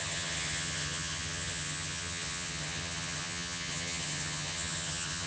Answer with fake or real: fake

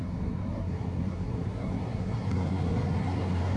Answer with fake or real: fake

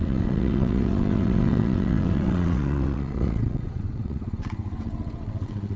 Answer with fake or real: fake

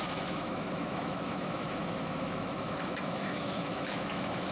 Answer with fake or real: fake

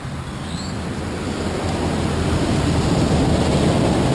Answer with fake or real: real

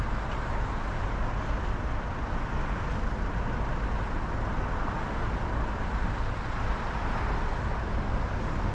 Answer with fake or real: real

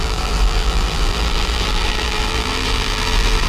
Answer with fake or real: fake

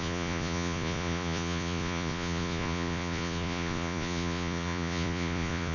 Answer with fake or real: fake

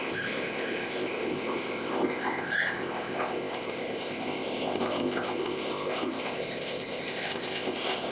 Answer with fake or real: fake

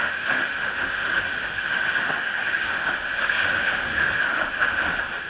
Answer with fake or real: fake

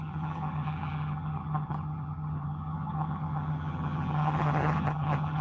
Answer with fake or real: fake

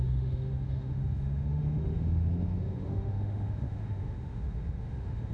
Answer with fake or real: fake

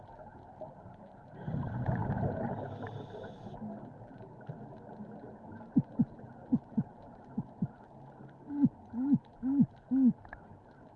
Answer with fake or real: real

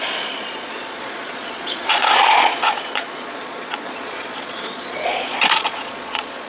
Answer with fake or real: fake